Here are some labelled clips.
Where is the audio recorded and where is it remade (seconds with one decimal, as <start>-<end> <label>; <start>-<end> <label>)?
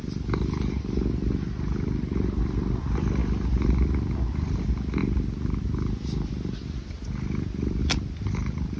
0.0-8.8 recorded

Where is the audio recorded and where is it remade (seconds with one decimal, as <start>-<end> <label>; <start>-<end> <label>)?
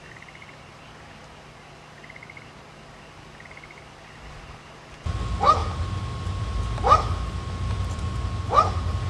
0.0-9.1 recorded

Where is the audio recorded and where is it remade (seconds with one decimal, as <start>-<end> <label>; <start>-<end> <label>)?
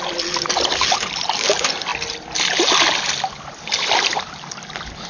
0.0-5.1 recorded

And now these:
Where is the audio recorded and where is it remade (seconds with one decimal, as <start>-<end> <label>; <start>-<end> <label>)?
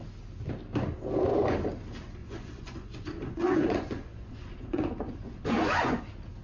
0.0-2.2 recorded; 2.2-6.0 remade; 6.0-6.4 recorded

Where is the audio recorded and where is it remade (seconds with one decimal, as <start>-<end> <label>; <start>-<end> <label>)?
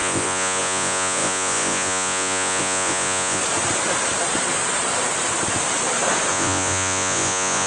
0.0-3.4 remade; 3.4-6.3 recorded; 6.3-7.7 remade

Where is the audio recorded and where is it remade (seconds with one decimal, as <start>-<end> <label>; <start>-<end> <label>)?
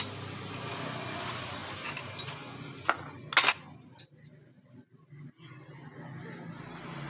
0.0-7.1 recorded